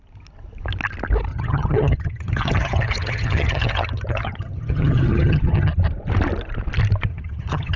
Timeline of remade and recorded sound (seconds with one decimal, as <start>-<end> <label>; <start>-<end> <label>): 0.0-1.3 recorded; 1.3-5.7 remade; 5.7-7.1 recorded; 7.1-7.8 remade